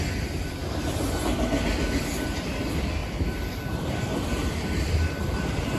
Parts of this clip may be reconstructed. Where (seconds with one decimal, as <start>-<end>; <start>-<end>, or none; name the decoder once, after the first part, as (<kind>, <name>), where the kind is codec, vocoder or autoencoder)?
0.0-0.6 (vocoder, BigVGAN v2); 2.1-5.8